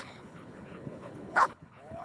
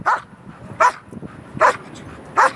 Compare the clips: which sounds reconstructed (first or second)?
first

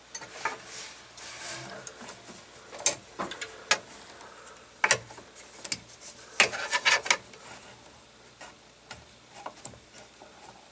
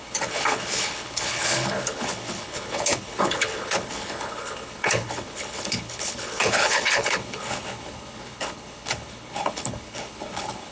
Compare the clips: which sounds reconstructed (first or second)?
second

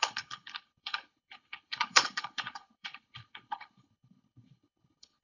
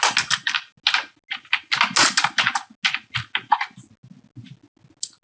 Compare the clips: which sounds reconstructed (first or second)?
first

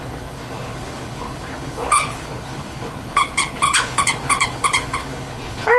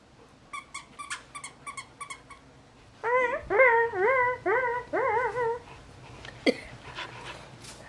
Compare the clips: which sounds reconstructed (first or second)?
first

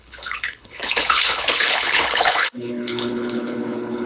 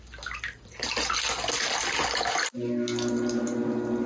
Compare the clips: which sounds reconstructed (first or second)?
first